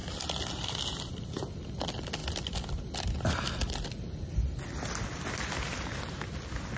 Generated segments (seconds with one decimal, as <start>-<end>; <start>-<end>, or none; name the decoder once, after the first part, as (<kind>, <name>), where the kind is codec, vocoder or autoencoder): none

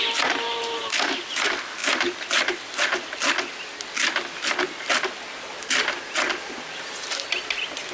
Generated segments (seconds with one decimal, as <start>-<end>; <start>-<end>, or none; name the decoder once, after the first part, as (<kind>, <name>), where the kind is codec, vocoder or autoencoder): 0.0-0.5 (vocoder, BigVGAN v2); 1.3-1.8; 6.1-7.9